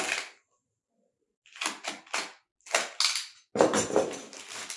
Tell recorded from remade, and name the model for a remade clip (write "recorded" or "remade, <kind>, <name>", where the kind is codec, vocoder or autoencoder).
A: recorded